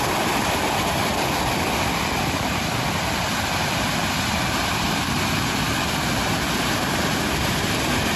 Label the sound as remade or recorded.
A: remade